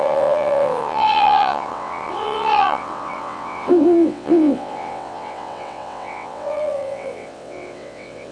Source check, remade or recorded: remade